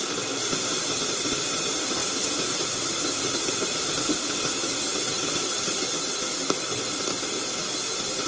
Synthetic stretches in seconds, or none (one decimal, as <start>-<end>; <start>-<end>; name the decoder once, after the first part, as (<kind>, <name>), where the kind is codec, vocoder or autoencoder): none